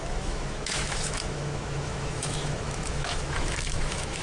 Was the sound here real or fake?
fake